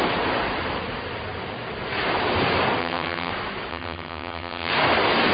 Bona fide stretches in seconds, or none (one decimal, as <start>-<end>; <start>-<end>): 0.0-2.8; 3.3-3.7; 4.7-5.3